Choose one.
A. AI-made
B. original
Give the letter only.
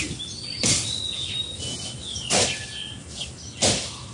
B